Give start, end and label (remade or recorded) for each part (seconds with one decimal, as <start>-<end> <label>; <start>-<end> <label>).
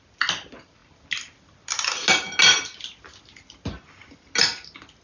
0.0-5.0 recorded